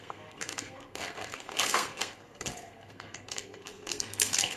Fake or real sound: fake